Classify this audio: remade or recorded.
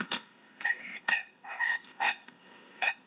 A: remade